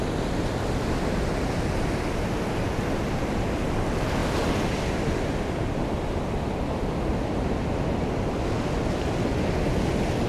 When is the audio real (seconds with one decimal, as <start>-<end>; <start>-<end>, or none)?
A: 0.0-10.3